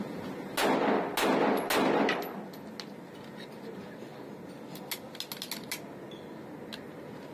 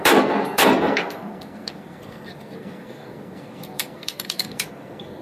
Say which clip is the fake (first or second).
second